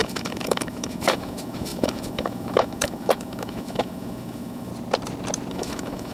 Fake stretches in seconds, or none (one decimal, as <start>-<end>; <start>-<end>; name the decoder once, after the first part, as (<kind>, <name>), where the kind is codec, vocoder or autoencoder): 0.0-4.7 (autoencoder, DAC-VAE); 5.5-6.1